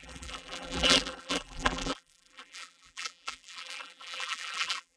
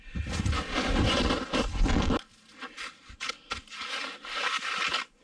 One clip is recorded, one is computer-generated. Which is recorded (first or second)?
second